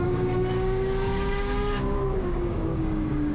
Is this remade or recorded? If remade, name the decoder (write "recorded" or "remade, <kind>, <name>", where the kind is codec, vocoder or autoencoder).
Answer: remade, codec, DAC